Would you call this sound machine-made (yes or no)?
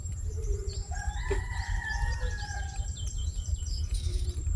yes